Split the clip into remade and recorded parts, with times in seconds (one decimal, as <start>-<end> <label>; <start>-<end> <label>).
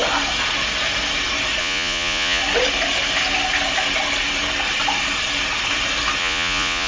0.0-1.6 recorded; 1.6-2.4 remade; 2.4-6.2 recorded; 6.2-6.9 remade